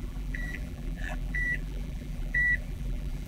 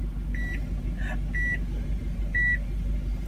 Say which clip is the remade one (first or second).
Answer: first